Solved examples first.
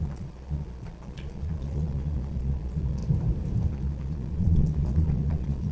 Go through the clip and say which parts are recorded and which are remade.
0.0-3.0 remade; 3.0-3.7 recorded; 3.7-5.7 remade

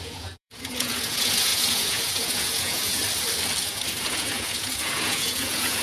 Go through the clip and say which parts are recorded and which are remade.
0.0-3.0 remade; 3.0-3.6 recorded; 3.6-5.8 remade

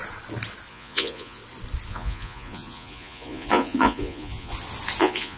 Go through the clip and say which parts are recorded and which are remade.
0.0-0.7 recorded; 0.7-1.4 remade; 1.4-1.9 recorded; 1.9-4.5 remade; 4.5-5.0 recorded; 5.0-5.4 remade

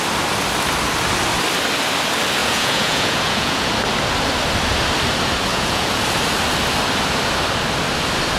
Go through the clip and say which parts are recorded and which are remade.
0.0-2.4 recorded; 2.4-3.7 remade; 3.7-5.5 recorded; 5.5-6.0 remade; 6.0-8.4 recorded

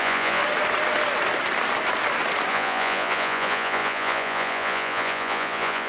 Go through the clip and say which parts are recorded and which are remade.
0.0-0.4 remade; 0.4-2.5 recorded; 2.5-5.9 remade

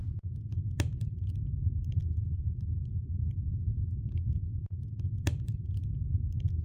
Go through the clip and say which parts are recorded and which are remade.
0.0-6.6 recorded

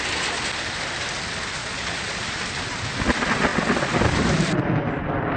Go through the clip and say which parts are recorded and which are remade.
0.0-1.6 recorded; 1.6-2.2 remade; 2.2-5.4 recorded

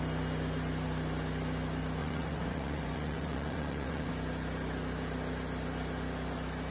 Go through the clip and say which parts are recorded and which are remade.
0.0-2.0 recorded; 2.0-4.1 remade; 4.1-6.7 recorded